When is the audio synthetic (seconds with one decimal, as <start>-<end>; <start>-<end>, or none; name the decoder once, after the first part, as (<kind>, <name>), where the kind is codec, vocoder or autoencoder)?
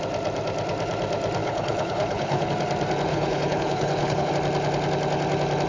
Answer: 1.4-2.5 (codec, HILCodec); 3.1-4.3